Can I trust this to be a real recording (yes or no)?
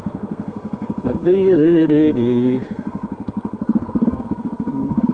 no